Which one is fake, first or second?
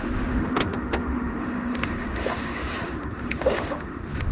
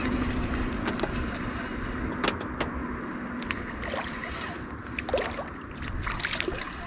first